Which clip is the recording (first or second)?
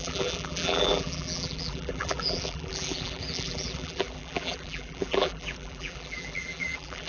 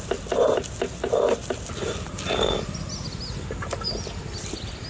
second